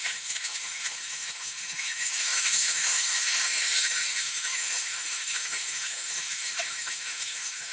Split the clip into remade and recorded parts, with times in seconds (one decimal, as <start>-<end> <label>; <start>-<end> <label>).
0.0-7.7 remade

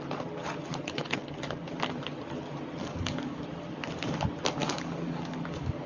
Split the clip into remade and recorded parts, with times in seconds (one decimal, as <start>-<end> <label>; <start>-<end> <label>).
0.0-2.8 recorded; 2.8-3.4 remade; 3.4-4.6 recorded; 4.6-5.9 remade

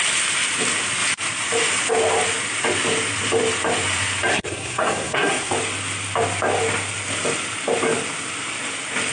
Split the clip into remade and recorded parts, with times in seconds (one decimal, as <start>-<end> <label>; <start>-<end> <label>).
0.0-4.3 recorded; 4.3-5.5 remade; 5.5-9.1 recorded

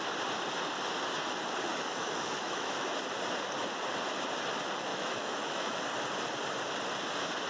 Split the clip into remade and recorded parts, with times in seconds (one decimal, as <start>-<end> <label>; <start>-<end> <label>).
0.0-1.7 recorded; 1.7-3.0 remade; 3.0-4.9 recorded; 4.9-5.8 remade; 5.8-7.5 recorded